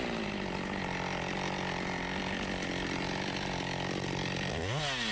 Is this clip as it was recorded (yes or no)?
yes